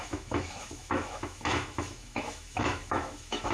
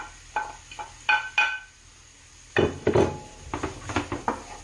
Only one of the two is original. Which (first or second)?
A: second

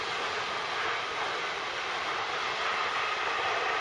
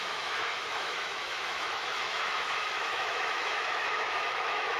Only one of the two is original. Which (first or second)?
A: first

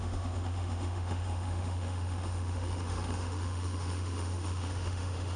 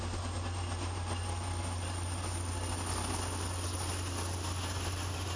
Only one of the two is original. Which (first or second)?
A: second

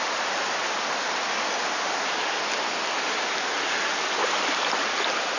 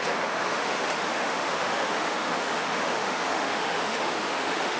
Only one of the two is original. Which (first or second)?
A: first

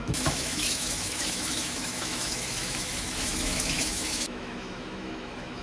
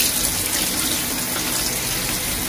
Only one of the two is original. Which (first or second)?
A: second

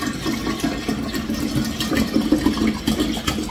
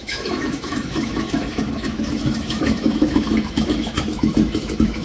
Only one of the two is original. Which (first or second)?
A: first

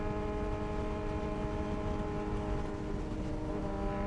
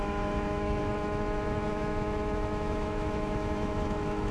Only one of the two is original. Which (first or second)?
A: first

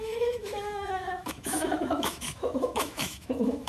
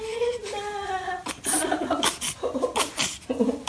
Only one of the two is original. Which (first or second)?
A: second